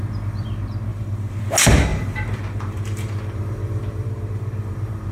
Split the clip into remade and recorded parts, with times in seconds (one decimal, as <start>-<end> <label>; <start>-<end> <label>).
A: 0.0-0.9 recorded; 0.9-1.4 remade; 1.4-1.9 recorded; 1.9-5.1 remade